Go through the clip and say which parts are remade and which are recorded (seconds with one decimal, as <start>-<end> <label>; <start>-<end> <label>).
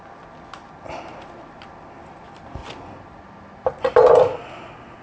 0.0-5.0 recorded